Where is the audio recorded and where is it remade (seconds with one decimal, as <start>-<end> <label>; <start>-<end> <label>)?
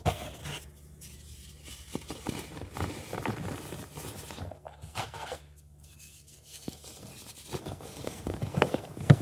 0.0-0.4 remade; 0.4-4.4 recorded; 4.4-7.1 remade; 7.1-7.6 recorded; 7.6-9.2 remade